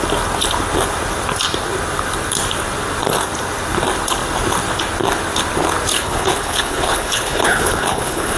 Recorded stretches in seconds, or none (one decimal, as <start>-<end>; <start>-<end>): 0.0-5.9